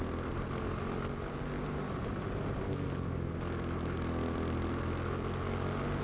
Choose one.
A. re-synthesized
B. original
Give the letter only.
B